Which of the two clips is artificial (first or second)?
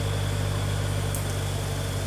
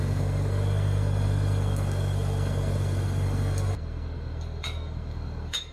second